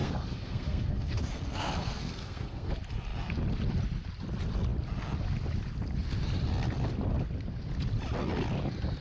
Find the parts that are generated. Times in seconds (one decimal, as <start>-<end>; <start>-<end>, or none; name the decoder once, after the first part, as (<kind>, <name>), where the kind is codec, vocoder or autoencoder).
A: 0.0-2.7 (codec, SNAC)